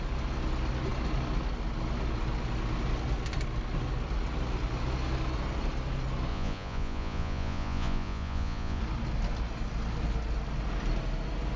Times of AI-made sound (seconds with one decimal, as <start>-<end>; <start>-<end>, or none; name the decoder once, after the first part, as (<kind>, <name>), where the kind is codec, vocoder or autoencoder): 6.3-8.8 (vocoder, Vocos)